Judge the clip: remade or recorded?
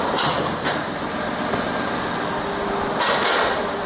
recorded